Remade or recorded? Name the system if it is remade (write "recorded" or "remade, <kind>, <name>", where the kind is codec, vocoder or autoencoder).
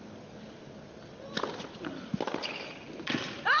recorded